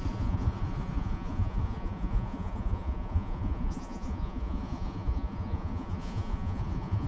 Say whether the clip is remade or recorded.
remade